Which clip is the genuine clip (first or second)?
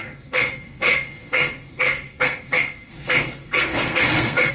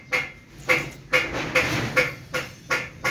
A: second